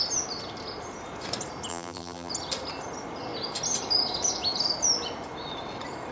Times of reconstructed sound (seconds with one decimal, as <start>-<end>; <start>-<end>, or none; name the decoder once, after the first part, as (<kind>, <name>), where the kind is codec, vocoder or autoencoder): 1.7-2.3 (vocoder, BigVGAN v2)